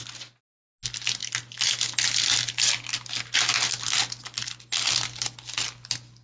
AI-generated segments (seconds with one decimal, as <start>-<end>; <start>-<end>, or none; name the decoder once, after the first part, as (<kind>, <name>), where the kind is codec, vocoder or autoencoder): none